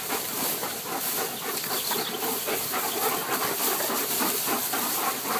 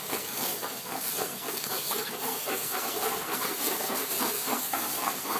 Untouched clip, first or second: first